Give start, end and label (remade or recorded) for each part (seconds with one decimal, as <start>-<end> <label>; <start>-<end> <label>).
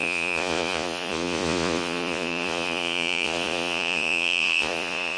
0.0-5.2 remade